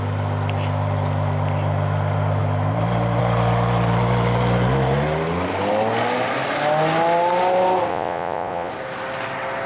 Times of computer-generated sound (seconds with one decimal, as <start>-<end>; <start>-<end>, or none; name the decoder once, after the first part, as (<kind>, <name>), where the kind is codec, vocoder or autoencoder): 7.9-8.7 (vocoder, Vocos)

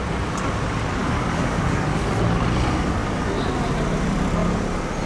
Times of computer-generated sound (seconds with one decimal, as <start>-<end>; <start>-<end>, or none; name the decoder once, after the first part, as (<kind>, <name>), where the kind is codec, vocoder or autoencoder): 1.0-2.0 (codec, DAC)

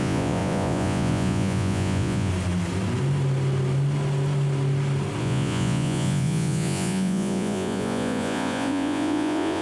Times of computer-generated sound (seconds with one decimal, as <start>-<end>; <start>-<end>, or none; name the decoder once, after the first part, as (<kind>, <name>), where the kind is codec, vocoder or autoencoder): 0.0-2.3 (vocoder, Vocos); 5.2-9.6

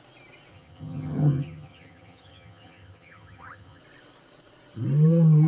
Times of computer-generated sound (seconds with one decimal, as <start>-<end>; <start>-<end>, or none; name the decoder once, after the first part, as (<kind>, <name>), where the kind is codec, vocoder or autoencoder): 0.5-3.8 (vocoder, HiFi-GAN)